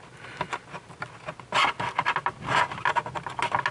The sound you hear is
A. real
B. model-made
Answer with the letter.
A